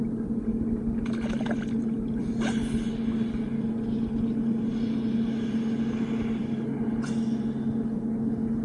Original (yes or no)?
yes